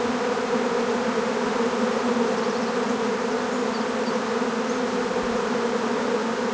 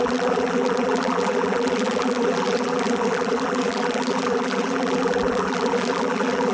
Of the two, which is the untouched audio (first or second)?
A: first